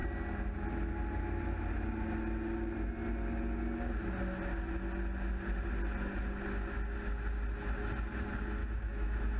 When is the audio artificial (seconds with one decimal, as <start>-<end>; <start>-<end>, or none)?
8.6-9.4

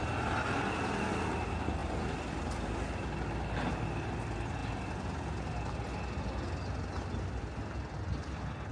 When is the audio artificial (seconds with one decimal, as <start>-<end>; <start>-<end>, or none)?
none

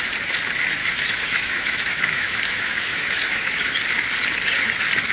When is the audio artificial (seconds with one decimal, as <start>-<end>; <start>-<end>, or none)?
0.8-3.8

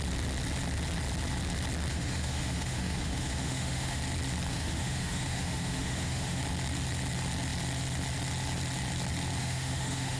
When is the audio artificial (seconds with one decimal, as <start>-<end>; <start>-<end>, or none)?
1.9-4.0; 4.5-6.4; 9.4-10.2

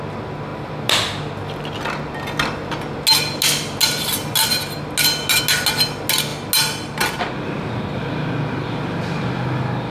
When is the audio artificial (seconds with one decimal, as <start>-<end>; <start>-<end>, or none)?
none

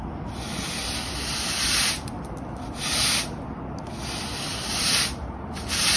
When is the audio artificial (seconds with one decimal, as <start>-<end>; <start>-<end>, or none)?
none